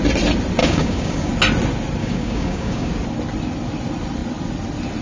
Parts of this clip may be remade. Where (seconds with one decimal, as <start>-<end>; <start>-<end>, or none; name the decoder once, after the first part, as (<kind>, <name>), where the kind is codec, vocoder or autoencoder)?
0.6-1.3 (codec, DAC); 2.0-2.9